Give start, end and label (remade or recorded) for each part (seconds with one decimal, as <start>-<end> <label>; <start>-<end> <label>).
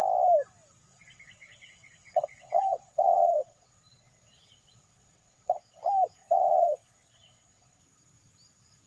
0.0-0.9 recorded; 0.9-5.8 remade; 5.8-6.2 recorded; 6.2-7.8 remade; 7.8-8.9 recorded